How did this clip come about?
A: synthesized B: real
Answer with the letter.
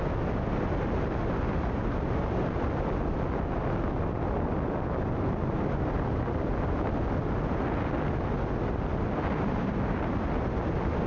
B